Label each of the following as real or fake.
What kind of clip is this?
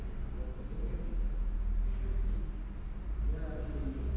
real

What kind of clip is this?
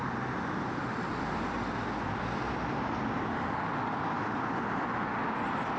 real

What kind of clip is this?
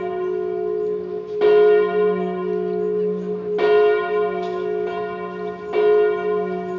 real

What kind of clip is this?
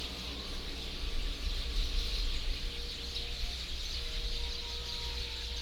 real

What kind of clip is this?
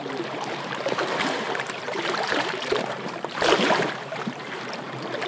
fake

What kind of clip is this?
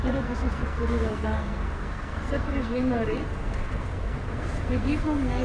fake